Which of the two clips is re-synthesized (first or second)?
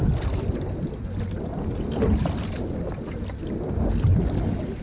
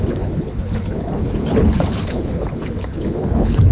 second